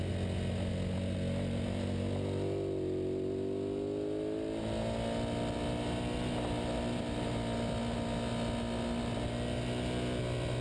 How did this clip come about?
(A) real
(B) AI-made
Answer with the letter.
A